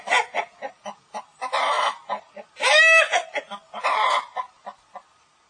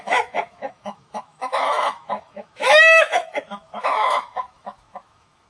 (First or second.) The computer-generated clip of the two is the second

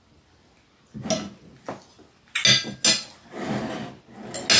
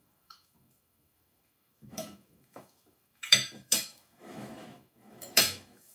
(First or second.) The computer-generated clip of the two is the second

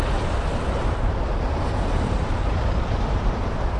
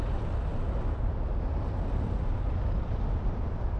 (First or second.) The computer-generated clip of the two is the first